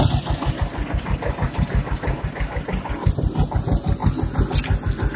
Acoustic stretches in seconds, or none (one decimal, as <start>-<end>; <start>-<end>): 0.0-5.2